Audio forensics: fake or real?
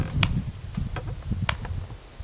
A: real